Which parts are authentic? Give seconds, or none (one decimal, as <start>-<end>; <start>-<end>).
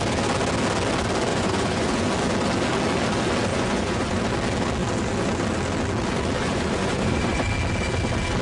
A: 0.0-1.3; 2.1-3.5; 4.2-6.4; 7.4-8.4